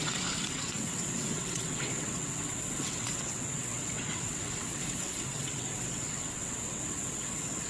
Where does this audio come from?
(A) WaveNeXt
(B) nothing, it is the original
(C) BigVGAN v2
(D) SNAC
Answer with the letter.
A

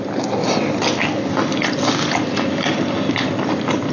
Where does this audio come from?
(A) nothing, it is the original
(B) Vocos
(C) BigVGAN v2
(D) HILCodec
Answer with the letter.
A